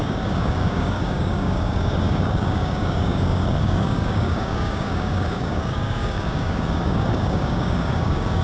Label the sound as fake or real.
fake